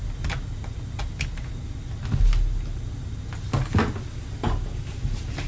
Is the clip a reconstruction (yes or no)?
no